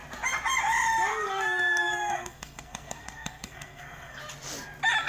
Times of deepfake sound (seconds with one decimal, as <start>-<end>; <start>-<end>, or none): 1.1-4.2